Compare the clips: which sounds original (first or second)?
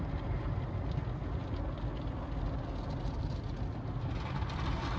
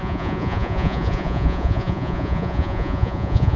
first